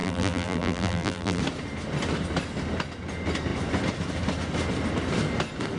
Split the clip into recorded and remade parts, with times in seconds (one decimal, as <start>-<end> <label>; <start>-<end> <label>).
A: 0.0-1.4 remade; 1.4-5.8 recorded